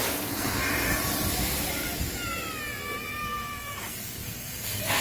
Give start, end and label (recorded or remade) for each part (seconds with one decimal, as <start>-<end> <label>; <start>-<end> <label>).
0.0-0.6 remade; 0.6-3.6 recorded; 3.6-5.0 remade